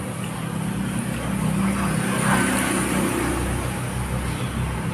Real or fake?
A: real